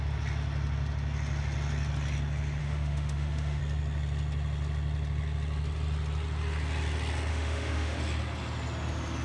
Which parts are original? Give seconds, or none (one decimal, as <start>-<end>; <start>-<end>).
0.0-2.6; 3.6-7.3; 8.0-9.2